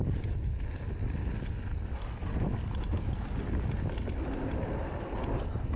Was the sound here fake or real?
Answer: real